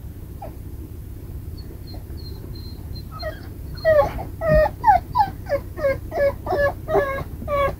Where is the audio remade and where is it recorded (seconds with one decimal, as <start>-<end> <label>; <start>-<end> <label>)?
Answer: 0.0-3.5 remade; 3.5-7.8 recorded